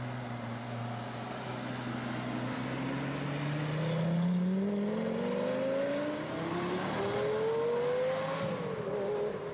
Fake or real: real